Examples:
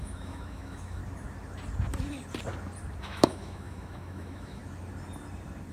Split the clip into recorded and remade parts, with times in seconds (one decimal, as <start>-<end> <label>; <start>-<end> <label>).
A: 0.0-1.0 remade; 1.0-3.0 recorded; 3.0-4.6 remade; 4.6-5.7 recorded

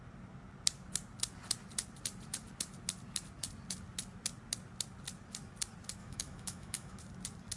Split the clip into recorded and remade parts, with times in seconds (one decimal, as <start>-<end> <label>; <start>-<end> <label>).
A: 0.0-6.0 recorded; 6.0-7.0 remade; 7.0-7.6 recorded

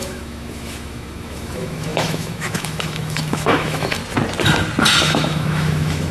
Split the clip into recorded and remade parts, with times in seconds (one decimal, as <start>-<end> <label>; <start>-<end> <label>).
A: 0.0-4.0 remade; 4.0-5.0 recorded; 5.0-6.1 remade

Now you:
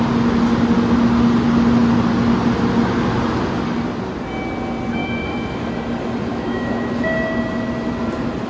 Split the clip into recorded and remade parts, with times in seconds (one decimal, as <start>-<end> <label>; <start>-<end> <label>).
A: 0.0-5.0 recorded; 5.0-5.7 remade; 5.7-6.3 recorded; 6.3-6.9 remade; 6.9-8.5 recorded